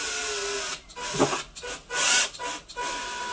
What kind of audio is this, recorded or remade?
recorded